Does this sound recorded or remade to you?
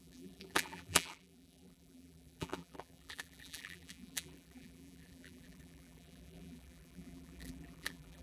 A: remade